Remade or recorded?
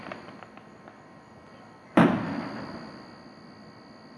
recorded